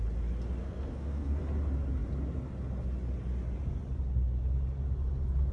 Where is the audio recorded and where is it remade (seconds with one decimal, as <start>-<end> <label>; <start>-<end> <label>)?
0.0-0.6 recorded; 0.6-1.4 remade; 1.4-5.5 recorded